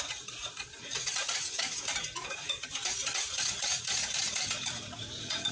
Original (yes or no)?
no